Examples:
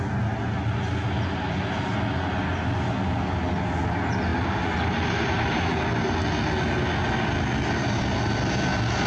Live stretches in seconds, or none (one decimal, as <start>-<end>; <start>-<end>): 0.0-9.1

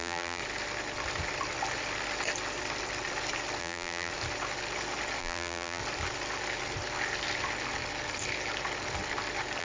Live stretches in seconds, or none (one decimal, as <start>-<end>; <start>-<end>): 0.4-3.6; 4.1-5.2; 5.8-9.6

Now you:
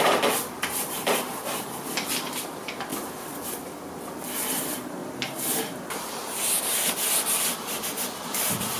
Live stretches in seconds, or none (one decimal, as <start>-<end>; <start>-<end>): 2.9-3.4; 5.0-6.6

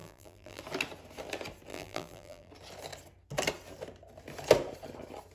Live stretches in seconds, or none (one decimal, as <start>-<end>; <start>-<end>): 0.6-1.7; 2.5-5.3

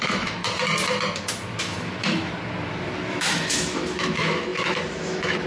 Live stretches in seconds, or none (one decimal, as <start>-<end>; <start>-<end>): 0.4-1.6; 2.3-3.1

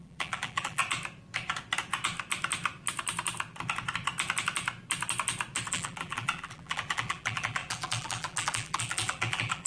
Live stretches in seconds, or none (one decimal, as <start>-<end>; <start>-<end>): 0.8-5.7